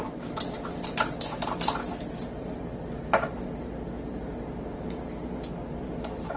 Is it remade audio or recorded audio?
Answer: remade